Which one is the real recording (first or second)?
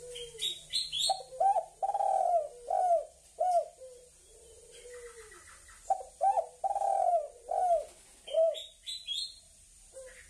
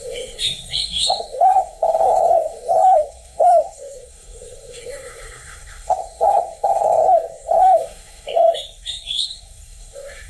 first